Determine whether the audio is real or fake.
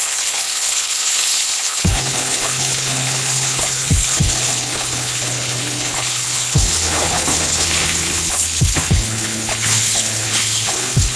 fake